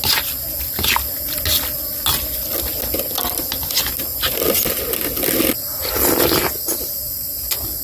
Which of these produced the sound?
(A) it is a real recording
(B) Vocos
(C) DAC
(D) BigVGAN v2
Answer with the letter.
A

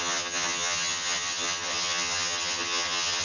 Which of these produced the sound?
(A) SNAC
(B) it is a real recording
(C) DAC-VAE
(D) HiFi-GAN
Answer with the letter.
D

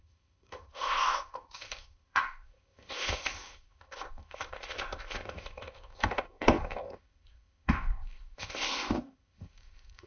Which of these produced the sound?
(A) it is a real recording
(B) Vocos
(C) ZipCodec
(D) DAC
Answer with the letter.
C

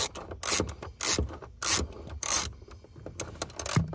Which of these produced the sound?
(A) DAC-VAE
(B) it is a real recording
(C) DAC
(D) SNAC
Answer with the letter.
B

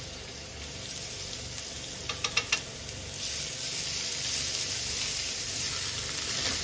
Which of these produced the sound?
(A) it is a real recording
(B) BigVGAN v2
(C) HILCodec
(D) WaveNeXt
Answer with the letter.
A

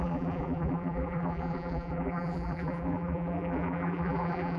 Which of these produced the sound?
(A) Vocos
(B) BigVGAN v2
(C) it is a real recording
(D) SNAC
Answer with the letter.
B